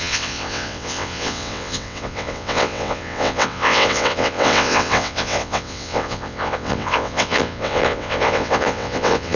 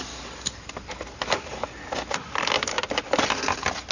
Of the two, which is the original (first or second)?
second